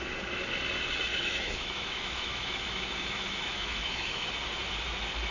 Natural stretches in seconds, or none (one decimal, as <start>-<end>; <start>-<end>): 0.0-1.1; 4.3-5.3